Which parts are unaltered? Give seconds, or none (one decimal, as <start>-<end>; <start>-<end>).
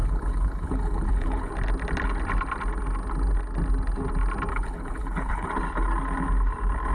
1.5-4.5; 5.5-6.9